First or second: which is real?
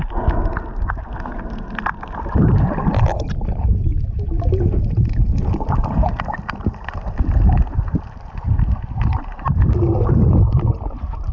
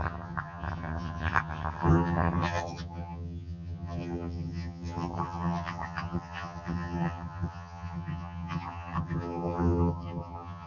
first